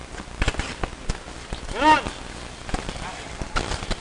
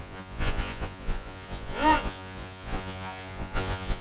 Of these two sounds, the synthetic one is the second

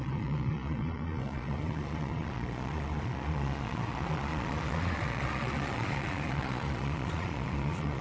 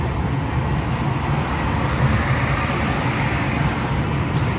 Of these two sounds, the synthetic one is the first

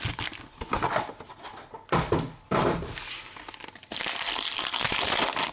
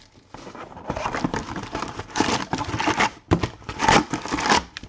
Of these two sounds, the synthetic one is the second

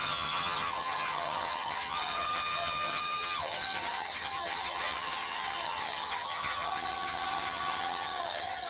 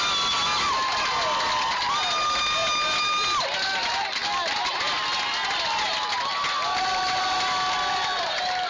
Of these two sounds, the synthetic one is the first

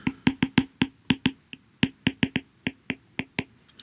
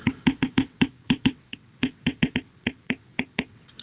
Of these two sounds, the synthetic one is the second